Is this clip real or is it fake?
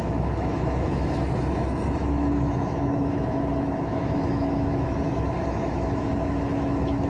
fake